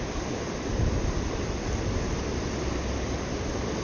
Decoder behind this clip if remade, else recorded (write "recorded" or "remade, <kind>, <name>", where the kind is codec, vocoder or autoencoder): recorded